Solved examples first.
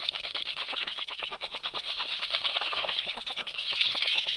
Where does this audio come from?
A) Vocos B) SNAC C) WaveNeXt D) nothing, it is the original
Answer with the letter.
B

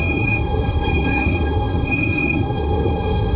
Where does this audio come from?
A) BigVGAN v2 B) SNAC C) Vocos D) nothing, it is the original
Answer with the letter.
B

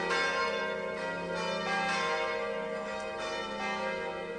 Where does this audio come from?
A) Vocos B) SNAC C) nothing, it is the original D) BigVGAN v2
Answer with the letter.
C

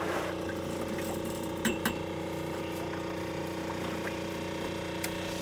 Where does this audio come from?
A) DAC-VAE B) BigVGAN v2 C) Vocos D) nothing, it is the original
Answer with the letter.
B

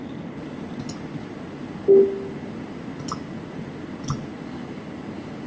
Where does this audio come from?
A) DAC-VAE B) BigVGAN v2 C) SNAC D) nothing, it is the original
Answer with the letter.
D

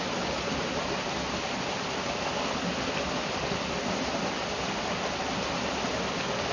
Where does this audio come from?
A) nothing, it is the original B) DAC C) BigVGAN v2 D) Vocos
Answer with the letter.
A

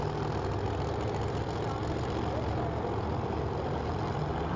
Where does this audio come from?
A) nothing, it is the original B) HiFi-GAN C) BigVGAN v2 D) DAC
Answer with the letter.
A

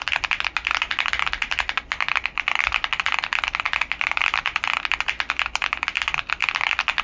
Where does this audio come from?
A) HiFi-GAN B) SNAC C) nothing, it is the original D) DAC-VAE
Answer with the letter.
C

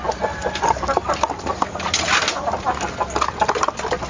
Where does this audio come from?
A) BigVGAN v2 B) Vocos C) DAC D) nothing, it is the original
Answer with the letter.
D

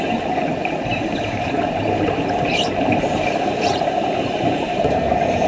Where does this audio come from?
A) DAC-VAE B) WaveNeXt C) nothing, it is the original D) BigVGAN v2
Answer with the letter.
D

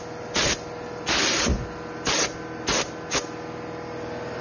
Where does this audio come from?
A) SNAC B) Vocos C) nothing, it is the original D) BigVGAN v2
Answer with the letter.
C